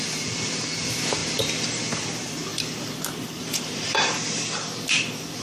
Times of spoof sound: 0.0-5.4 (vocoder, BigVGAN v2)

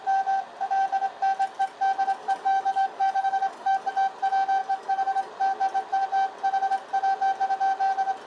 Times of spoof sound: 2.2-3.9 (codec, DAC); 4.6-5.3

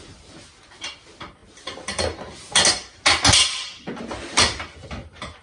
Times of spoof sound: none

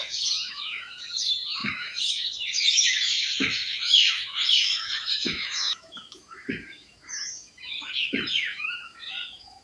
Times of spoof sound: 0.0-9.6 (autoencoder, DAC-VAE)